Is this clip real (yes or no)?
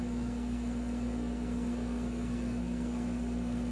no